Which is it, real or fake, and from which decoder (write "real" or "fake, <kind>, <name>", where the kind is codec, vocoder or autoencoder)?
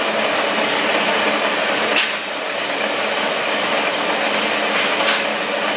real